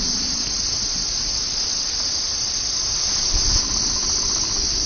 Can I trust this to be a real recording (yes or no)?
yes